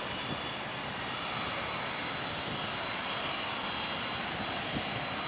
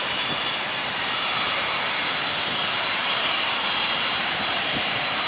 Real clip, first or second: first